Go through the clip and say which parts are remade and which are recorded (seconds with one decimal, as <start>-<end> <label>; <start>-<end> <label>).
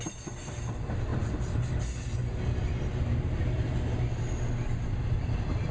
0.0-1.1 remade; 1.1-4.5 recorded; 4.5-5.7 remade